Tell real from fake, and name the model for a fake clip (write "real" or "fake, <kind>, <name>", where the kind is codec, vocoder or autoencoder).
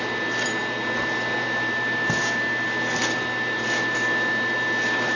real